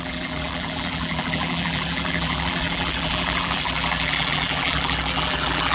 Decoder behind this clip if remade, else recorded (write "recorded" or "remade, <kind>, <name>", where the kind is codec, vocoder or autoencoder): remade, vocoder, BigVGAN v2